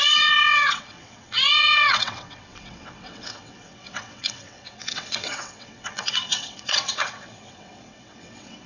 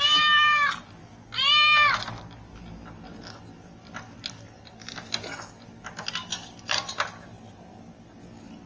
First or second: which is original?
second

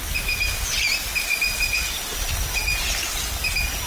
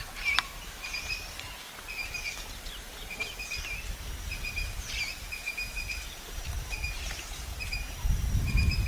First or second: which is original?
first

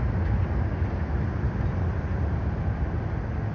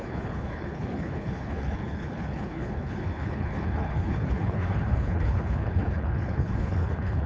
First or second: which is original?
first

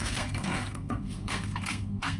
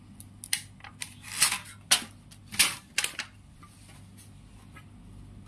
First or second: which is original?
second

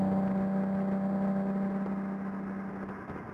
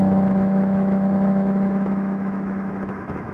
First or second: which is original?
first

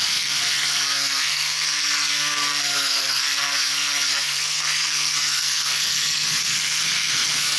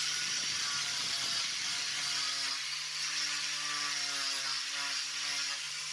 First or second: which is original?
second